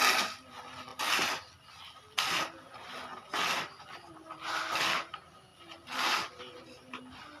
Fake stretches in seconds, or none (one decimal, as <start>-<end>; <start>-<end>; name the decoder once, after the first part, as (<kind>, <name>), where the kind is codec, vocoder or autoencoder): 0.9-1.7 (vocoder, BigVGAN v2); 3.2-3.8; 5.5-6.4